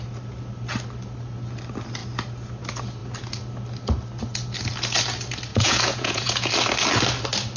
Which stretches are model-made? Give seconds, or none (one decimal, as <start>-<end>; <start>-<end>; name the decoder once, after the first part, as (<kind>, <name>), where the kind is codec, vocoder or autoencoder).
5.5-6.5 (vocoder, Vocos)